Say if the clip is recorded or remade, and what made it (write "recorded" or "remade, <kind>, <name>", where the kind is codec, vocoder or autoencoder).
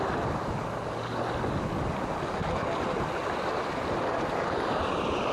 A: recorded